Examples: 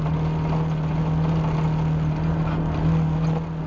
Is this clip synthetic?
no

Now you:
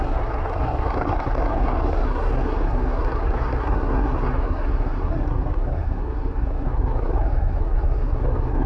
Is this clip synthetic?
yes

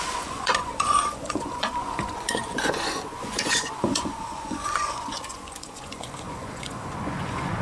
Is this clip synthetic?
yes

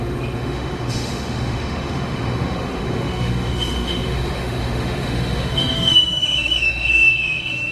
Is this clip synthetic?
yes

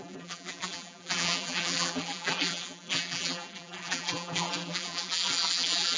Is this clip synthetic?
yes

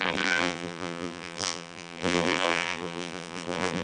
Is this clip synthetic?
yes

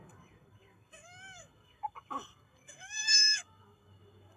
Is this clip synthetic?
yes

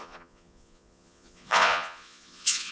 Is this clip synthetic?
yes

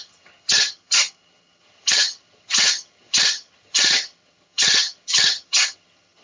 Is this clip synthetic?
yes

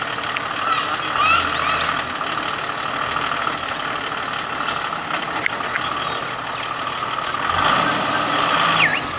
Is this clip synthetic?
no